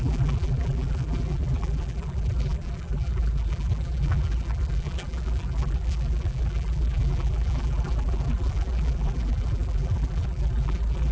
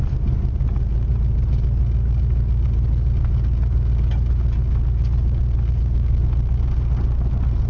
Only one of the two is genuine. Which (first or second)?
second